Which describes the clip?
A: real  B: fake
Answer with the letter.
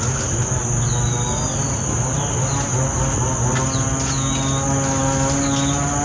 A